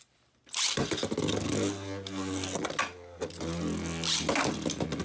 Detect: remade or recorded recorded